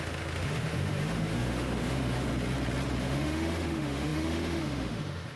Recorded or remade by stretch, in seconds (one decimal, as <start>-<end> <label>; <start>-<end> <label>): 0.0-2.3 remade; 2.3-3.0 recorded; 3.0-5.4 remade